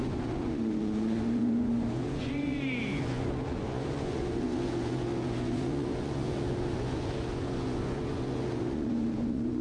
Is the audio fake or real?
fake